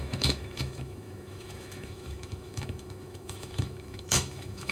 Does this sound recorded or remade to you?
remade